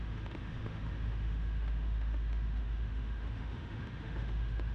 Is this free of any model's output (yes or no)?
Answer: no